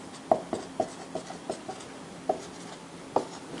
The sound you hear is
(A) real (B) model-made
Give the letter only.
A